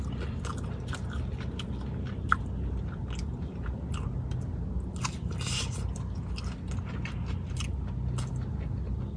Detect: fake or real real